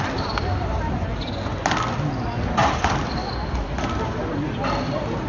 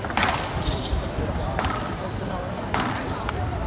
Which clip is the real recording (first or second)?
first